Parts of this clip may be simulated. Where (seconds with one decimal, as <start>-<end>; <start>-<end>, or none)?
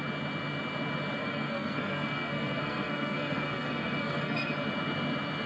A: 1.2-4.5